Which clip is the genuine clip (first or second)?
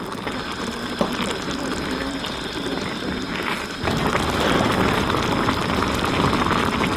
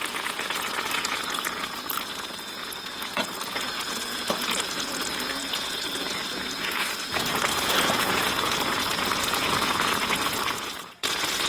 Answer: first